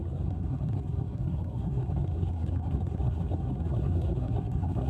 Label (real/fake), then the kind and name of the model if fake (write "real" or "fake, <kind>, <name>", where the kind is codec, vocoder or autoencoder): fake, codec, SNAC